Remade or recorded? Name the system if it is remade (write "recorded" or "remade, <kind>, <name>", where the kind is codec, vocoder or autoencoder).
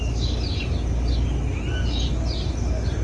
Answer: recorded